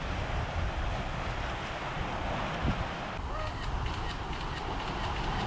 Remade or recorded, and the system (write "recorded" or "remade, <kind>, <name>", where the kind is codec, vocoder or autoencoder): recorded